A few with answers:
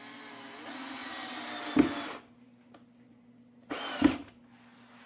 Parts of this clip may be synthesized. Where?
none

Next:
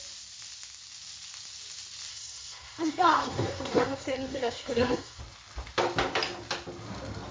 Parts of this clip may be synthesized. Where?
2.1-5.2 (codec, SNAC)

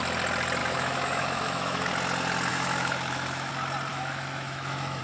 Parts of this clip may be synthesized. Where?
0.6-1.9 (autoencoder, DAC-VAE); 2.5-3.5; 3.9-5.0

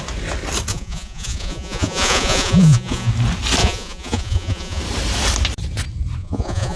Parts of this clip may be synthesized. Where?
0.7-3.1 (vocoder, Vocos); 3.6-4.8; 6.2-6.8